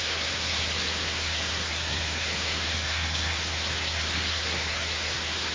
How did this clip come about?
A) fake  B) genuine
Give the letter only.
A